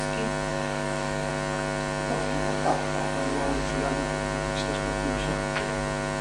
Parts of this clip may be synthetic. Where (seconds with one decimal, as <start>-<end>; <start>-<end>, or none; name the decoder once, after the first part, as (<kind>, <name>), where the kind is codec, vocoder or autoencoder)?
0.5-1.3 (codec, DAC); 2.2-3.7